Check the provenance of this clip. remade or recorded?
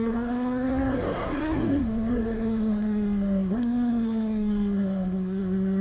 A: remade